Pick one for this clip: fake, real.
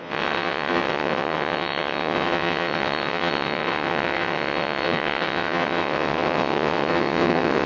fake